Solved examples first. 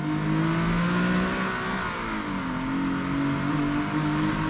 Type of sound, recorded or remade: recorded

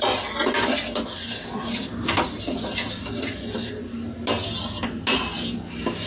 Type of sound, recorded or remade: recorded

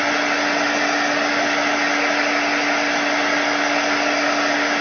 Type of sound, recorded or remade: recorded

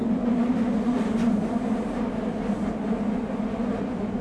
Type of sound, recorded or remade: recorded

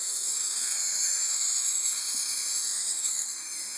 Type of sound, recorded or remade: remade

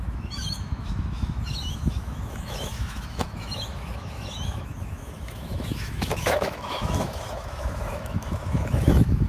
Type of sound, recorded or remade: remade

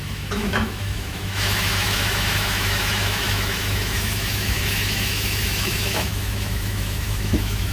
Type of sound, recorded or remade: remade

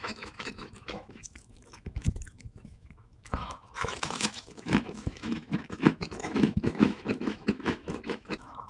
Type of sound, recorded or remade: remade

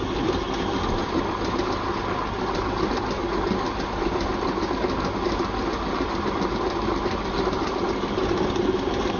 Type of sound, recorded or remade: recorded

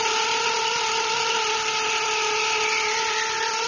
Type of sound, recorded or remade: recorded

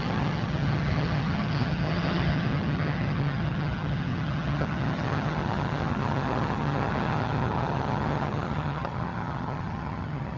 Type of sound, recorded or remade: remade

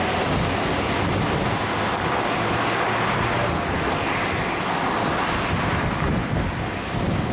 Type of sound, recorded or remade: recorded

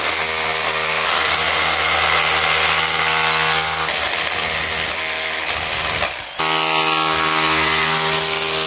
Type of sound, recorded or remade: recorded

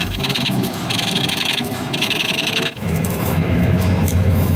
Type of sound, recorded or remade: remade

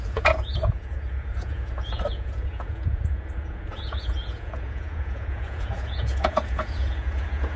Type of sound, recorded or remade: remade